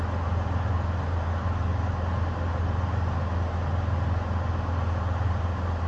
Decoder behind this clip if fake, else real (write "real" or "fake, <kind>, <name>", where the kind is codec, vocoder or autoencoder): real